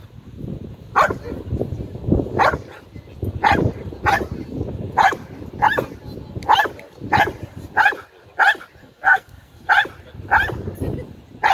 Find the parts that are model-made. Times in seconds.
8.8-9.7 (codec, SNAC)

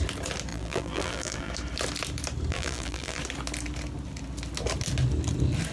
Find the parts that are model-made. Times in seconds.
0.5-1.5 (vocoder, BigVGAN v2); 2.5-3.2

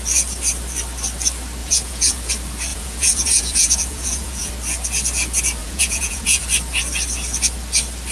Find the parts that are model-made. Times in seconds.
1.6-2.3 (vocoder, Vocos); 2.7-4.5; 5.6-6.4

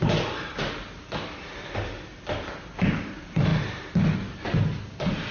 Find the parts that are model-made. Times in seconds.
none

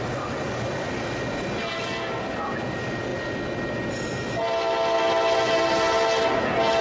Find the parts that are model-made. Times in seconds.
none

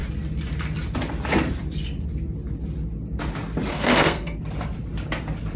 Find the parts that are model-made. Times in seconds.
3.7-4.4 (codec, SNAC)

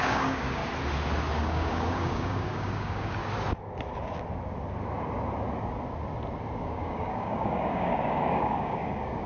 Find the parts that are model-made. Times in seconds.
0.0-0.6 (codec, DAC); 1.4-3.2; 6.6-9.3

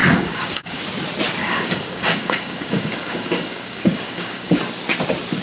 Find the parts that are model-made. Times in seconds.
0.0-0.8 (codec, DAC); 1.4-4.6